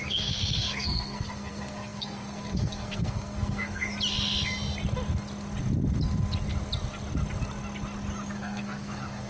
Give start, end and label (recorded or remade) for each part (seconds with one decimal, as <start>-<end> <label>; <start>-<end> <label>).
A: 0.0-3.9 remade; 3.9-8.3 recorded; 8.3-9.3 remade